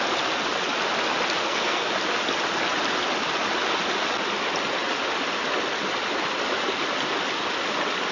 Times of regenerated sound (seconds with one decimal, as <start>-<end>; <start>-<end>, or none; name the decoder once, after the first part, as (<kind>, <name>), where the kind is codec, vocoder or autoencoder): 1.4-1.9 (codec, SNAC)